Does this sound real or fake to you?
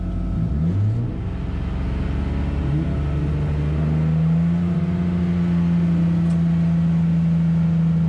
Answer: real